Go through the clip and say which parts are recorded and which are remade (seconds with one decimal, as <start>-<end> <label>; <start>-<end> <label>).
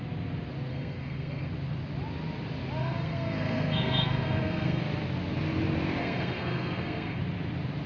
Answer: 0.0-0.7 recorded; 0.7-1.5 remade; 1.5-2.8 recorded; 2.8-4.8 remade; 4.8-6.0 recorded; 6.0-7.2 remade; 7.2-7.9 recorded